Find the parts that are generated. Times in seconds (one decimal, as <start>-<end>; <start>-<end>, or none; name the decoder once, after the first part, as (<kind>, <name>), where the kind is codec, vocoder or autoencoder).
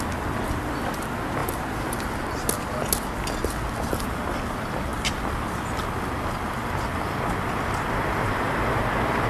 1.4-1.9 (vocoder, BigVGAN v2)